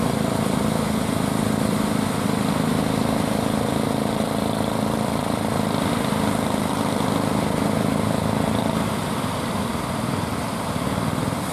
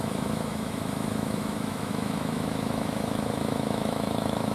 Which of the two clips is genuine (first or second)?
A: first